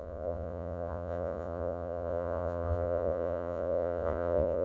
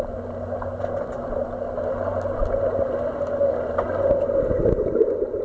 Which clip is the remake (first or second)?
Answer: first